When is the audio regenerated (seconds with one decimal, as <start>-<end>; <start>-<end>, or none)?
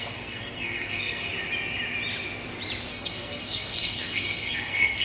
0.0-1.3; 2.9-5.0